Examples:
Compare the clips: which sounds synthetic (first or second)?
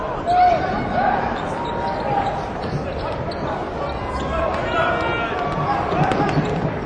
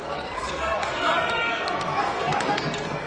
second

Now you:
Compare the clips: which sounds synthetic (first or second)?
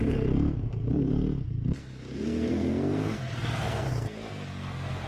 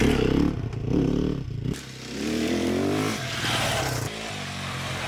first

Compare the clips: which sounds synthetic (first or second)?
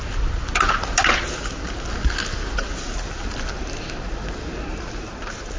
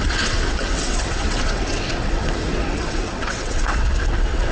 second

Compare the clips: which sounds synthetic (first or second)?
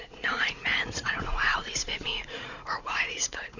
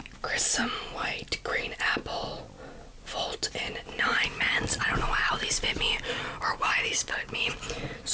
first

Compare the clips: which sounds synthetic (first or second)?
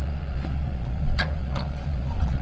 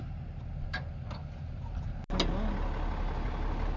first